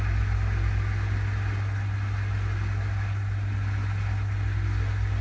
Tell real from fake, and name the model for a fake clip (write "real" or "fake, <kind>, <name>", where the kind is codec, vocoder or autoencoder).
real